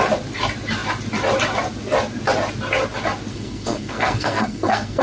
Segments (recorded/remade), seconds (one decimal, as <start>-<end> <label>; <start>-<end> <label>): 0.0-3.3 recorded; 3.3-5.0 remade